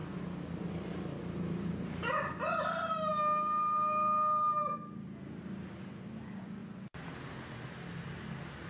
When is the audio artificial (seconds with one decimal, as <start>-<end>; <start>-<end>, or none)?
3.1-4.6